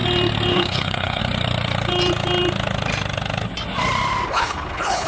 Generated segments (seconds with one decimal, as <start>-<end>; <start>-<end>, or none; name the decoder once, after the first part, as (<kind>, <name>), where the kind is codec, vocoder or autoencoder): 0.5-1.2 (codec, HILCodec); 4.3-5.1